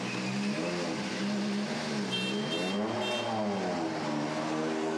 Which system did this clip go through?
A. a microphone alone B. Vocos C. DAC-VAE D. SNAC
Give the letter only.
A